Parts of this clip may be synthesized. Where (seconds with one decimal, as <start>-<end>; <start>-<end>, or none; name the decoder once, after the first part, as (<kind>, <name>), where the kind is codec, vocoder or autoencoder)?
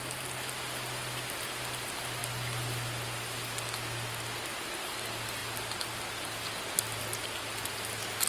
none